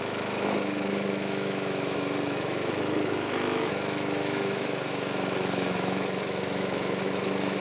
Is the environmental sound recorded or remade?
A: remade